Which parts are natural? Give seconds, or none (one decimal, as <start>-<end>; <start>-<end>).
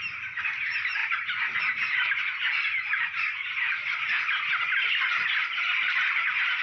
0.0-6.6